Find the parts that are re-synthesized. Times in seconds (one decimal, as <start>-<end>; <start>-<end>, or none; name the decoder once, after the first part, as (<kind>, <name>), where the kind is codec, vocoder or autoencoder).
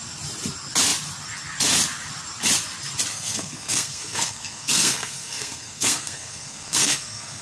3.1-7.4 (codec, SNAC)